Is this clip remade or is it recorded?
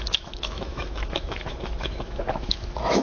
remade